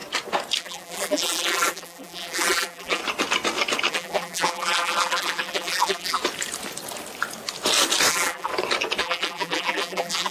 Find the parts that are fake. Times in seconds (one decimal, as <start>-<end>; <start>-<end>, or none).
0.6-3.0; 3.9-6.2; 8.1-8.5; 9.0-10.3